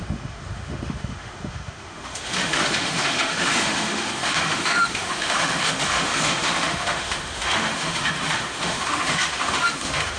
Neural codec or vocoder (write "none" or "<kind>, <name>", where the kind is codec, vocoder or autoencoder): autoencoder, DAC-VAE